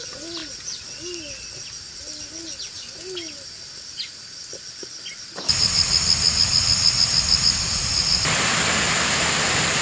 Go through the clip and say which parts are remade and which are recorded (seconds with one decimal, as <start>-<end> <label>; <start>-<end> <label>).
0.0-9.8 recorded